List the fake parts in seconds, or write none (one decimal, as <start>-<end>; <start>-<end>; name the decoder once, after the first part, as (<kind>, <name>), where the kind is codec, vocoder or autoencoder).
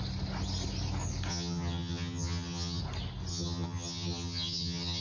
1.3-2.8 (vocoder, HiFi-GAN); 3.3-5.0